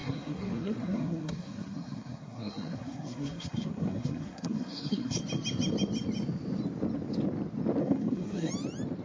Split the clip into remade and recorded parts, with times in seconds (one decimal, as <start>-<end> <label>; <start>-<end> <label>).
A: 0.0-5.2 remade; 5.2-7.8 recorded; 7.8-8.5 remade; 8.5-9.0 recorded